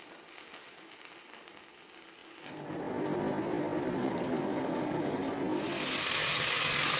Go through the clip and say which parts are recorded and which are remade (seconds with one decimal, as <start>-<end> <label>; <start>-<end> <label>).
0.0-4.0 recorded; 4.0-5.3 remade; 5.3-6.2 recorded; 6.2-7.0 remade